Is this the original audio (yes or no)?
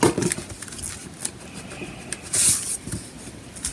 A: yes